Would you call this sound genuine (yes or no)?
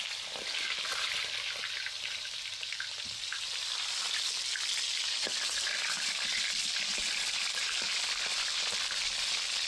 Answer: yes